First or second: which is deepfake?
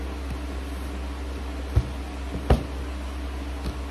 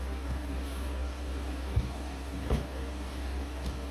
second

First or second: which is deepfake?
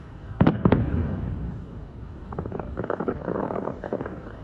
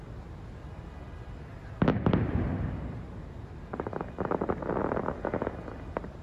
first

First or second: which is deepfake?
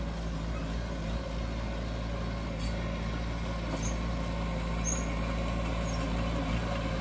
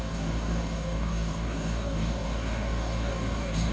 second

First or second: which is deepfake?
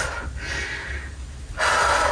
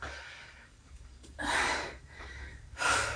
second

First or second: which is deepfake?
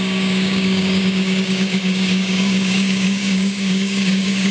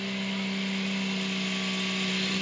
first